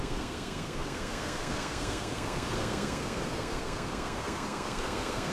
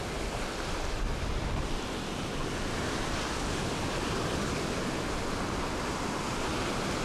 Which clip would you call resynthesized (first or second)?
first